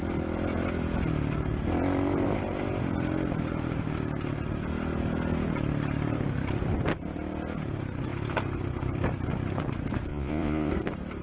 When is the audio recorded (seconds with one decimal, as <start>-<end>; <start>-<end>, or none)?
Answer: 0.0-10.1; 10.7-11.2